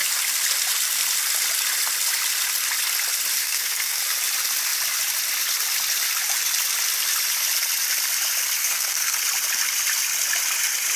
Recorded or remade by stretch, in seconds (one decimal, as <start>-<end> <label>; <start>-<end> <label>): 0.0-3.4 recorded; 3.4-4.0 remade; 4.0-8.6 recorded; 8.6-9.2 remade; 9.2-11.0 recorded